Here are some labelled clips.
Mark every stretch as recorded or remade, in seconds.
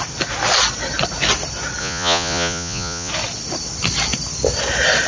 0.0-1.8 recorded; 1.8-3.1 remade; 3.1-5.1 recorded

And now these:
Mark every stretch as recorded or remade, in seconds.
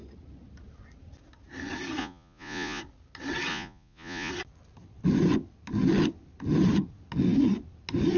0.0-2.0 recorded; 2.0-2.8 remade; 2.8-3.5 recorded; 3.5-4.3 remade; 4.3-8.2 recorded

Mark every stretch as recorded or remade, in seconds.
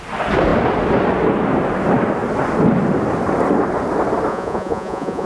0.0-4.3 recorded; 4.3-5.3 remade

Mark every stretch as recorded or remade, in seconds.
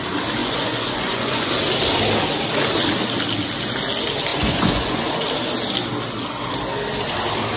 0.0-0.4 recorded; 0.4-1.5 remade; 1.5-4.3 recorded; 4.3-5.2 remade; 5.2-7.6 recorded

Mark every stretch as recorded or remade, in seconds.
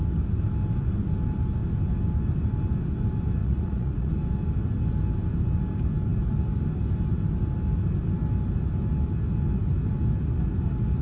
0.0-3.4 recorded; 3.4-4.1 remade; 4.1-11.0 recorded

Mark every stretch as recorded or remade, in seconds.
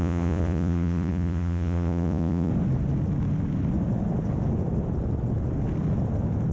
0.0-2.5 remade; 2.5-6.5 recorded